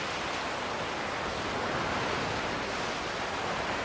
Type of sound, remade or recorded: recorded